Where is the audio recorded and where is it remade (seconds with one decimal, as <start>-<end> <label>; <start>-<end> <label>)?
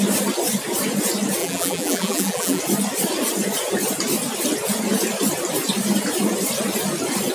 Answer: 0.0-1.4 recorded; 1.4-2.6 remade; 2.6-7.3 recorded